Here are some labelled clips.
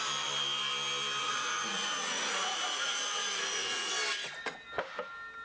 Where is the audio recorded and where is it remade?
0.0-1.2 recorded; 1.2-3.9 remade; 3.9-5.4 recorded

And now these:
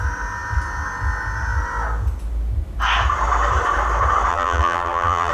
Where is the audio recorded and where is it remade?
0.0-4.3 recorded; 4.3-5.3 remade

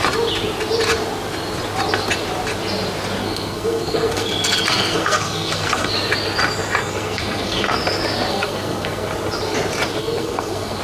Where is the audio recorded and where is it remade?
0.0-3.2 recorded; 3.2-5.9 remade; 5.9-6.8 recorded; 6.8-7.8 remade; 7.8-8.3 recorded; 8.3-9.1 remade; 9.1-10.0 recorded; 10.0-10.8 remade

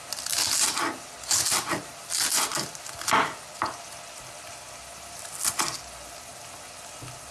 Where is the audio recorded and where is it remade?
0.0-7.3 recorded

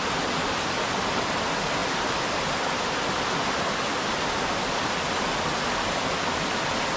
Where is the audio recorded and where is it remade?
0.0-7.0 recorded

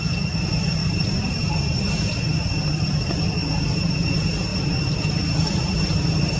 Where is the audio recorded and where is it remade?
0.0-6.4 remade

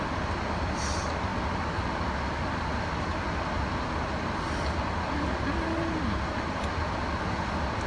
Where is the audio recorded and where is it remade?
0.0-7.9 recorded